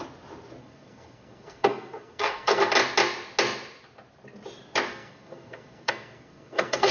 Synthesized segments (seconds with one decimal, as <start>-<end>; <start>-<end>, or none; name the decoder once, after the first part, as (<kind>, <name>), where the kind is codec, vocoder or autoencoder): 0.6-2.7 (codec, SNAC); 4.9-6.9